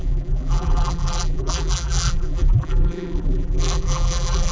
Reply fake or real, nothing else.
fake